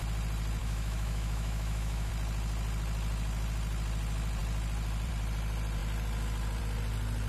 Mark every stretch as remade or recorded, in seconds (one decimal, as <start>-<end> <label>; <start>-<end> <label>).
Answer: 0.0-0.6 recorded; 0.6-2.1 remade; 2.1-7.3 recorded